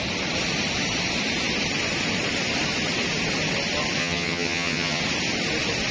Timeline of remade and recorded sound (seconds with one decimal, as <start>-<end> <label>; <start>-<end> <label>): 0.0-4.0 recorded; 4.0-5.0 remade; 5.0-5.9 recorded